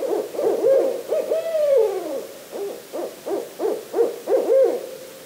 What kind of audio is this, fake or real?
real